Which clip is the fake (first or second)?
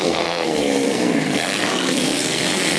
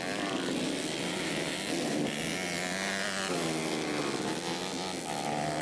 first